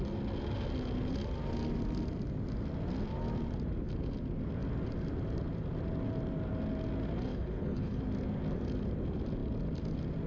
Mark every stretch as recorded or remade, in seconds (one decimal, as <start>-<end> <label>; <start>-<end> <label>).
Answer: 0.0-7.3 recorded; 7.3-8.0 remade; 8.0-10.3 recorded